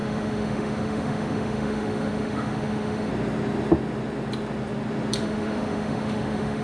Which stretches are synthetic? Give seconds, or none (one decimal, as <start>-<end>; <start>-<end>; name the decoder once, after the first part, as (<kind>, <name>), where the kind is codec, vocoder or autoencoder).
0.0-3.1 (autoencoder, DAC-VAE); 5.2-6.6